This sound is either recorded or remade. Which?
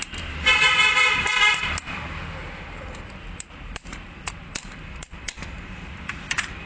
remade